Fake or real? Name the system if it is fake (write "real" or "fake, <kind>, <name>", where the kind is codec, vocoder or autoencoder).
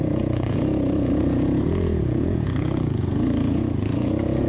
fake, vocoder, Vocos